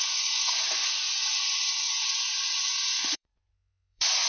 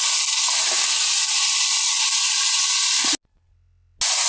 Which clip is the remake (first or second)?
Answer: first